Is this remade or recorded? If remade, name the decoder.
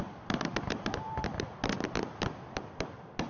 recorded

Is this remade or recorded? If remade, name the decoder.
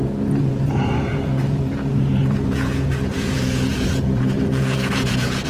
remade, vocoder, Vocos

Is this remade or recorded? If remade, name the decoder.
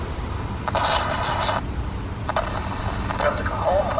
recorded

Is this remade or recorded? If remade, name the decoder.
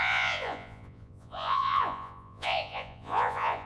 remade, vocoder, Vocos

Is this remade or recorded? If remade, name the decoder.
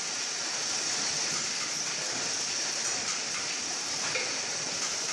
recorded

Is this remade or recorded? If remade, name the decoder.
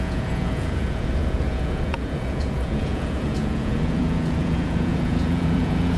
remade, vocoder, Vocos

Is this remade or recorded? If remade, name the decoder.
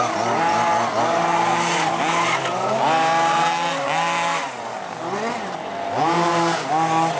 recorded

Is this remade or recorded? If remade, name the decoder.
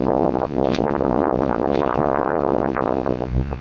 remade, vocoder, Vocos